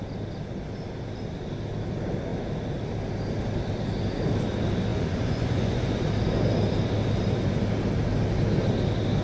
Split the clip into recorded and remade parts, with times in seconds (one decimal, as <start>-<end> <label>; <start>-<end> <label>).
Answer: 0.0-4.9 recorded; 4.9-6.0 remade; 6.0-9.2 recorded